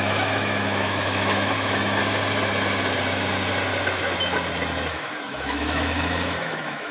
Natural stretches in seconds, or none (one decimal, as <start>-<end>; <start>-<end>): 2.0-4.9